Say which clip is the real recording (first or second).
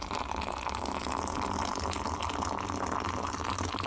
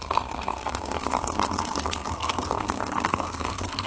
first